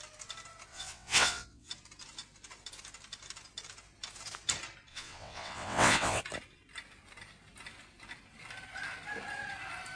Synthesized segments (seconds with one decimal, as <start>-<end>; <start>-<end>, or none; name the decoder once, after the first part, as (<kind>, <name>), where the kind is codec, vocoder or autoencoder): 0.7-1.7 (vocoder, WaveNeXt); 4.9-6.2